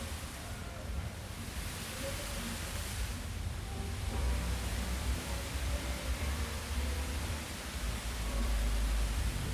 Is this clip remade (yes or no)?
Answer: yes